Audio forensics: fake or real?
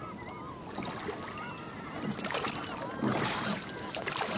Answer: real